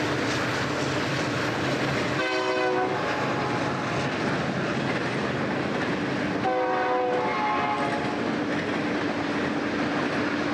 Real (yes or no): yes